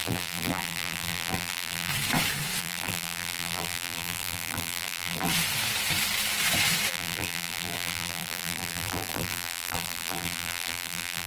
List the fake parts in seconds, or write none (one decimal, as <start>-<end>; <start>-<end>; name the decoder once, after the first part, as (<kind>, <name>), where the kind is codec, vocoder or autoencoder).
0.0-1.9 (vocoder, BigVGAN v2); 2.6-5.3; 6.9-11.3